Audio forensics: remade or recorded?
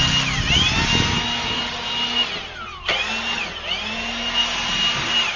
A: recorded